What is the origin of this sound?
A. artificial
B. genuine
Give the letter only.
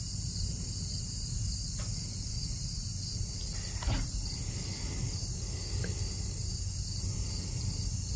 B